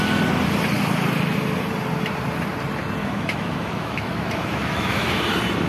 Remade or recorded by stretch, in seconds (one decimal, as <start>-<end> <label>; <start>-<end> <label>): 0.0-3.0 recorded; 3.0-5.2 remade; 5.2-5.7 recorded